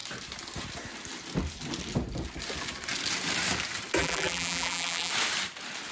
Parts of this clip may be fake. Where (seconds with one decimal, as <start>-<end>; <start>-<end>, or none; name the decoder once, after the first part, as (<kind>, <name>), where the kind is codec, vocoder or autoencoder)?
4.0-5.1 (vocoder, BigVGAN v2)